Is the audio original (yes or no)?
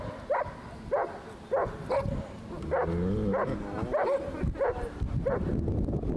yes